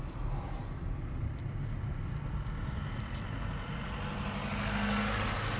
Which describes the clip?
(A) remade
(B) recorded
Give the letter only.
B